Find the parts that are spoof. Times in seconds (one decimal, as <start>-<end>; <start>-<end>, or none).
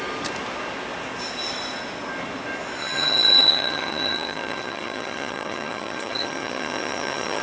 2.8-7.4